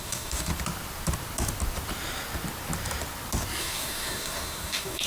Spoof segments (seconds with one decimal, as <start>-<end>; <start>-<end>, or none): 0.0-0.5; 3.6-5.1